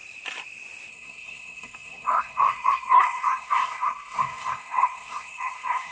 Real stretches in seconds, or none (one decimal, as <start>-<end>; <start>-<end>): 0.0-0.9